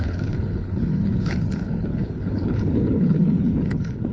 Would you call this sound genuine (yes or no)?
no